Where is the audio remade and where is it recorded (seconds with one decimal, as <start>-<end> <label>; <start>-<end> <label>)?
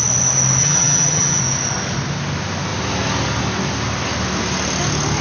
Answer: 0.0-0.6 recorded; 0.6-1.4 remade; 1.4-5.2 recorded